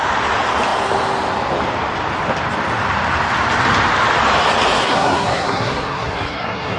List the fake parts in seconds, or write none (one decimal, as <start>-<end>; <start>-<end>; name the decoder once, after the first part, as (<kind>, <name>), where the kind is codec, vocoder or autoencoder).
4.8-6.8 (codec, SNAC)